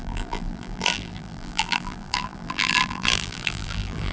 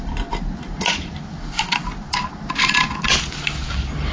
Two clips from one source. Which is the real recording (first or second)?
second